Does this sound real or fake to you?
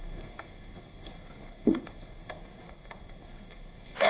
fake